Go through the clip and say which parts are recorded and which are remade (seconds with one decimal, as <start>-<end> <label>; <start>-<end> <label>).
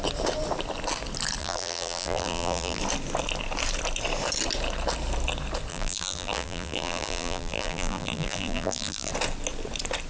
0.0-1.4 recorded; 1.4-2.8 remade; 2.8-5.7 recorded; 5.7-9.1 remade; 9.1-10.1 recorded